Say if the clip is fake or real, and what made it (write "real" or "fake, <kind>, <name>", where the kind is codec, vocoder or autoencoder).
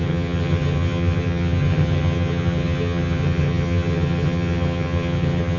fake, vocoder, HiFi-GAN